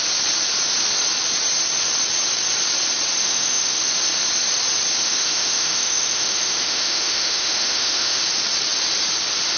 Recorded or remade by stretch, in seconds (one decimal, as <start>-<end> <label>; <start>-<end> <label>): 0.0-3.2 recorded; 3.2-3.9 remade; 3.9-5.0 recorded; 5.0-8.2 remade; 8.2-9.6 recorded